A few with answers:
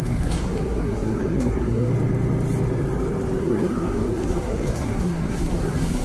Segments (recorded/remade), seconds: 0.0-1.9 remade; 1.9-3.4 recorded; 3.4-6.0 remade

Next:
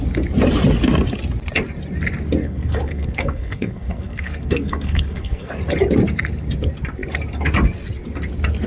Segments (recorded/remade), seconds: 0.0-2.4 recorded; 2.4-5.5 remade; 5.5-8.7 recorded

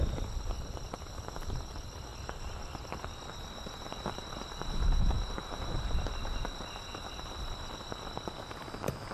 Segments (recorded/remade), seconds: 0.0-9.1 recorded

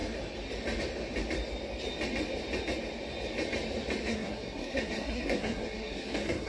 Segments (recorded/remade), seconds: 0.0-4.0 recorded; 4.0-6.5 remade